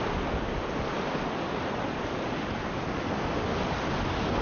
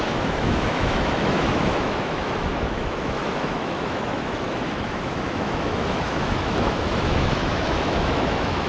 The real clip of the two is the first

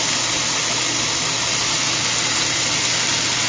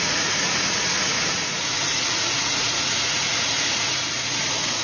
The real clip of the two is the first